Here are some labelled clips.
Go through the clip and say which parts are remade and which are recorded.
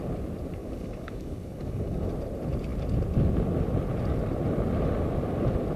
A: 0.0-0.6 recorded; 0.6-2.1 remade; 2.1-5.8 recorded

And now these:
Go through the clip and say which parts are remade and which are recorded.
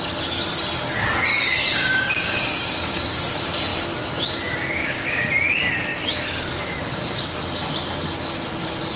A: 0.0-1.3 recorded; 1.3-2.8 remade; 2.8-4.8 recorded; 4.8-5.3 remade; 5.3-9.0 recorded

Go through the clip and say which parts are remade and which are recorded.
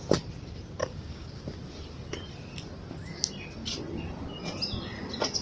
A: 0.0-0.8 recorded; 0.8-1.4 remade; 1.4-5.4 recorded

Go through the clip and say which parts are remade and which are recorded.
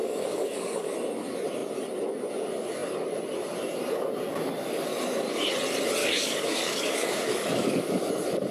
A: 0.0-0.9 remade; 0.9-6.0 recorded; 6.0-8.1 remade; 8.1-8.5 recorded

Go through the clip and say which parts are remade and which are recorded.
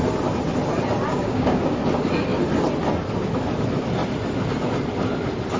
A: 0.0-1.1 recorded; 1.1-1.8 remade; 1.8-5.6 recorded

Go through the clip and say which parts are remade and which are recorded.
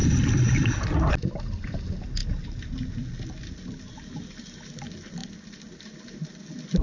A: 0.0-6.8 recorded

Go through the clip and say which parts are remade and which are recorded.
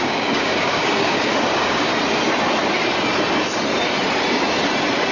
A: 0.0-1.9 remade; 1.9-5.1 recorded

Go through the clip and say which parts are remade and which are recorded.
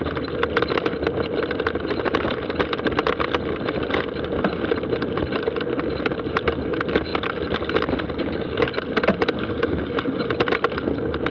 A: 0.0-8.2 recorded; 8.2-8.7 remade; 8.7-11.3 recorded